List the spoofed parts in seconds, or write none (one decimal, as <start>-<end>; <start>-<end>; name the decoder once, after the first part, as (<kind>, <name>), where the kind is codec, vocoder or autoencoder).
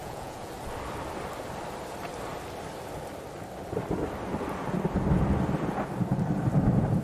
0.0-0.5 (vocoder, Vocos)